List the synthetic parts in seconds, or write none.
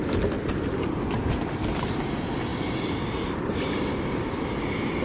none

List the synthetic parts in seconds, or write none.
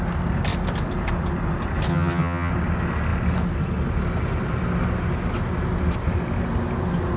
1.9-2.5 (vocoder, HiFi-GAN)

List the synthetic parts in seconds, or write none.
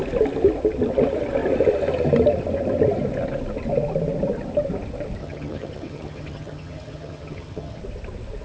5.2-7.8 (vocoder, HiFi-GAN)